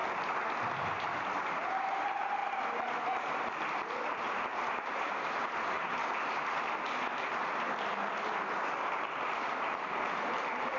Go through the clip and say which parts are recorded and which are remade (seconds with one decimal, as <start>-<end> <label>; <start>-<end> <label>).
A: 0.0-1.4 recorded; 1.4-2.4 remade; 2.4-4.1 recorded; 4.1-6.0 remade; 6.0-9.4 recorded; 9.4-10.8 remade